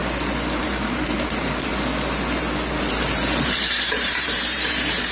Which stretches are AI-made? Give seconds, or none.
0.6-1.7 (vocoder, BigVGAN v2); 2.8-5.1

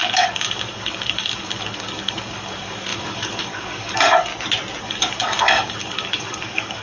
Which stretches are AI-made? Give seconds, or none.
0.0-4.3 (codec, DAC); 4.8-6.8

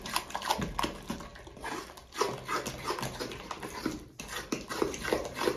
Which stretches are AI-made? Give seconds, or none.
none

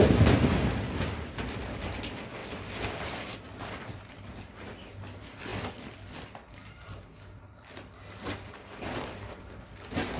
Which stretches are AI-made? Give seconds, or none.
none

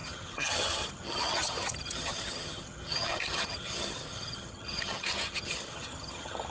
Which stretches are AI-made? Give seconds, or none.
0.0-6.5 (vocoder, HiFi-GAN)

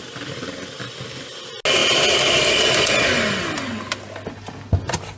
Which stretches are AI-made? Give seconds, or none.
none